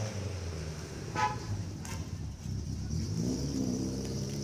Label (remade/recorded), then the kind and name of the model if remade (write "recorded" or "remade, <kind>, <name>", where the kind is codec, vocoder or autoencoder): remade, vocoder, BigVGAN v2